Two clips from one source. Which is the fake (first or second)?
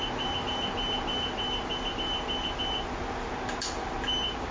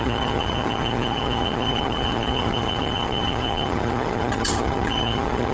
second